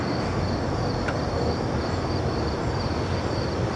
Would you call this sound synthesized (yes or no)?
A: no